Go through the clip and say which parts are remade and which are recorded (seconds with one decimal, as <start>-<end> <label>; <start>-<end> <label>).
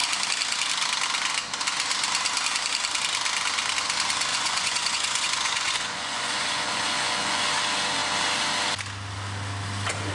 0.0-4.3 recorded; 4.3-7.5 remade; 7.5-10.1 recorded